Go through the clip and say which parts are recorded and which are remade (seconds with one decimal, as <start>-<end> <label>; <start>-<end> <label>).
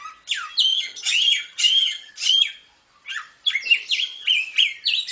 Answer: 0.0-0.7 recorded; 0.7-2.1 remade; 2.1-5.1 recorded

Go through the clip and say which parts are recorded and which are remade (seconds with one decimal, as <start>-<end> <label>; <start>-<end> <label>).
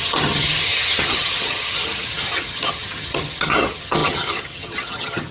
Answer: 0.0-5.3 remade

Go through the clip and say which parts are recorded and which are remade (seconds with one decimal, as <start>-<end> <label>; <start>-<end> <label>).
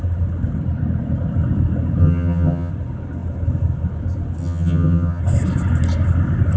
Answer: 0.0-2.0 recorded; 2.0-2.7 remade; 2.7-4.4 recorded; 4.4-5.2 remade; 5.2-6.6 recorded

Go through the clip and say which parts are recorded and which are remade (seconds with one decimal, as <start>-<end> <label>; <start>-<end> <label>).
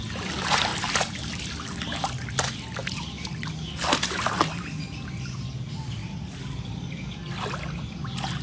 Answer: 0.0-8.4 recorded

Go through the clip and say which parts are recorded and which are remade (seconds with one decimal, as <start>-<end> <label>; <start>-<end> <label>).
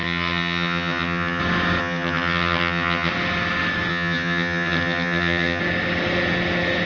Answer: 0.0-1.4 remade; 1.4-1.8 recorded; 1.8-3.1 remade; 3.1-3.9 recorded; 3.9-5.6 remade; 5.6-6.9 recorded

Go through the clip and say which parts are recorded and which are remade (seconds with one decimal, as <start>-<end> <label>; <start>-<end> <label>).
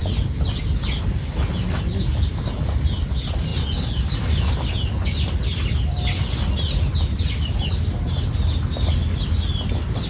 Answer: 0.0-10.1 recorded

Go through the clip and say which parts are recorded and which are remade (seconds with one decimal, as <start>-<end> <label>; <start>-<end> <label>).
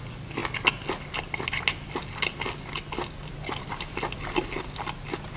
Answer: 0.0-5.4 recorded